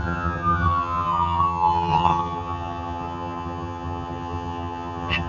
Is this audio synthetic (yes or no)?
yes